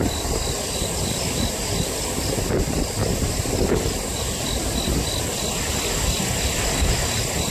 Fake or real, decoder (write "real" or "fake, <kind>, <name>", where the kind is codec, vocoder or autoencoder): real